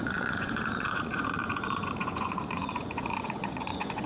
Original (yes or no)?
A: no